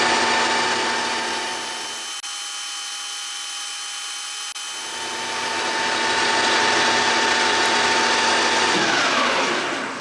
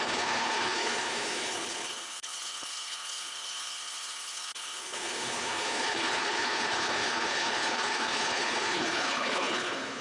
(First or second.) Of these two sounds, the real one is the first